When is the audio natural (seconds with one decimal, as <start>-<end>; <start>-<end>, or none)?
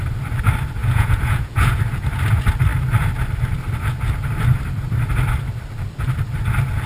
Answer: 0.0-0.8; 1.8-6.9